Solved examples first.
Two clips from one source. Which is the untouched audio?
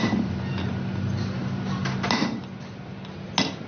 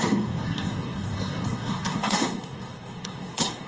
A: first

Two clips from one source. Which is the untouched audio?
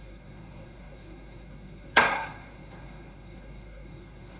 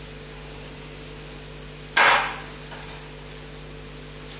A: second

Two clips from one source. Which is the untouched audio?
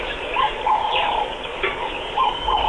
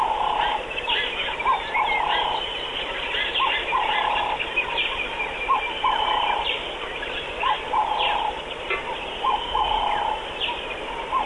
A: second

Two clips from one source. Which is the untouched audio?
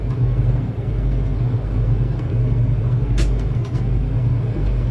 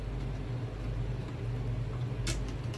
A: second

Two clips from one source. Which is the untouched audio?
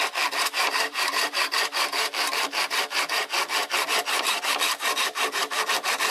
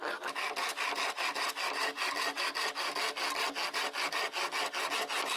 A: second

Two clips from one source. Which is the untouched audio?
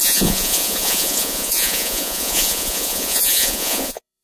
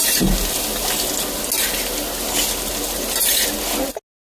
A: second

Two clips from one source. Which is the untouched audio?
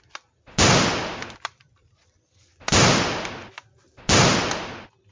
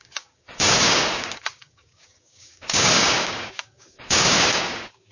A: first